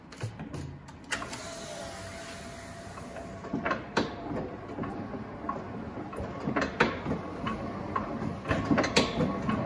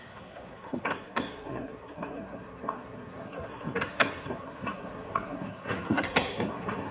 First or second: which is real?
first